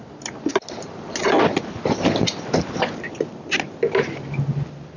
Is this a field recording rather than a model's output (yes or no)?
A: yes